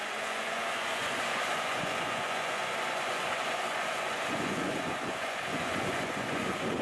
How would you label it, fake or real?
fake